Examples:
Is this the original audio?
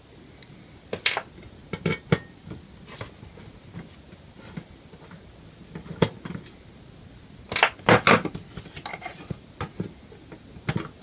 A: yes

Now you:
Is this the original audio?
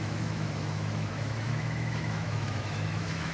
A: no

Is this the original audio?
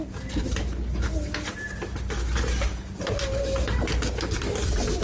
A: yes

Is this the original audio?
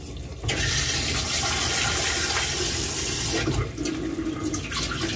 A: yes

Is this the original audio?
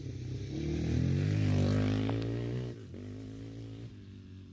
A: yes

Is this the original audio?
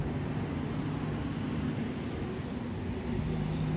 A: yes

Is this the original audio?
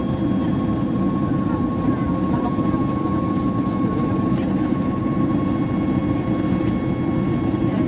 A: yes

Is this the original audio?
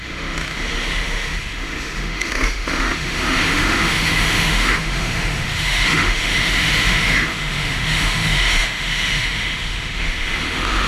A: no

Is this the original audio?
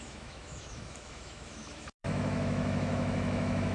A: no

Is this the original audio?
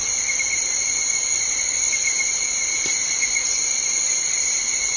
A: yes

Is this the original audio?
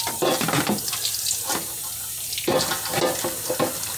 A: yes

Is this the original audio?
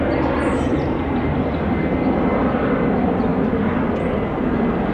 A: yes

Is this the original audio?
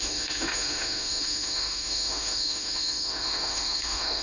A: no